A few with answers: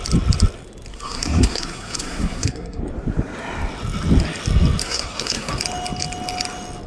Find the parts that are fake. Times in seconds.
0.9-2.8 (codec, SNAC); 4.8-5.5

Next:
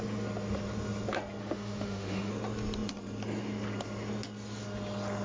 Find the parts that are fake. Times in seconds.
1.4-2.3 (autoencoder, DAC-VAE)